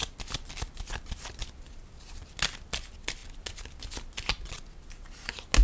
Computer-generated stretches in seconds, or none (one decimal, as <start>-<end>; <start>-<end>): none